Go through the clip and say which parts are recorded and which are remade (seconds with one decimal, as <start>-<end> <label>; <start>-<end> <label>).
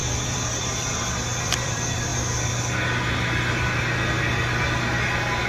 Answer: 0.0-2.1 remade; 2.1-5.5 recorded